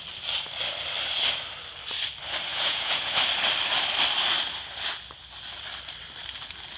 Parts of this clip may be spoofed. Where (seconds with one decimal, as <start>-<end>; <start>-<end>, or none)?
2.5-3.2